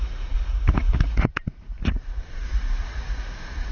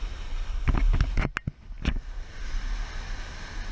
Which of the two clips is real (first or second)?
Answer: second